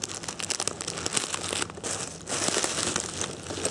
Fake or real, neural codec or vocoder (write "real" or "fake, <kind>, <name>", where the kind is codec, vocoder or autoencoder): real